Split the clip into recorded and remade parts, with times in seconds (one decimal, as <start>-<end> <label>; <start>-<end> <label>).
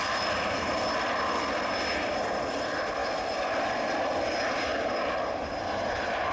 0.0-3.0 recorded; 3.0-4.0 remade; 4.0-6.3 recorded